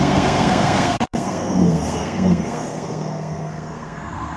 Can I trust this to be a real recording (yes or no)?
no